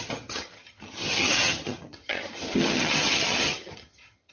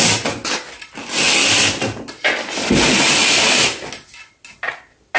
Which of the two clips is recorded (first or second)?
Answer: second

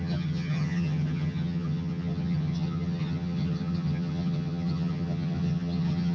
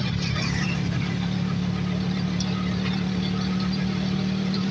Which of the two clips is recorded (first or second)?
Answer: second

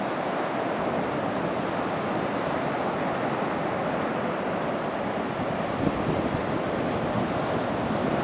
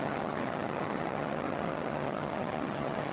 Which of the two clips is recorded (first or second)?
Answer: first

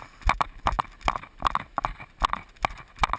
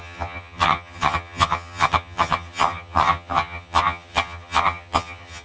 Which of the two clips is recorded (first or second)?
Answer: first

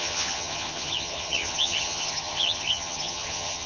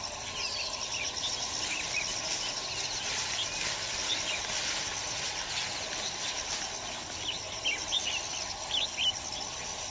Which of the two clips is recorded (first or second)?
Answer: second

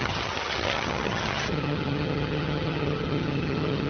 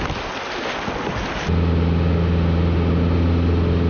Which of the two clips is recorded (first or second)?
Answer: second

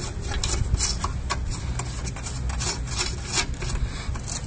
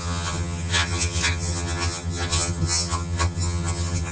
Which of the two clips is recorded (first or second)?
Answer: first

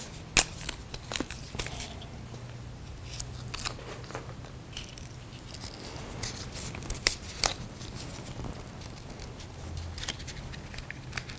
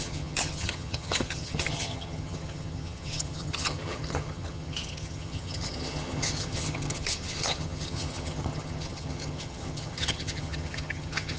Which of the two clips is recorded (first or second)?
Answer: first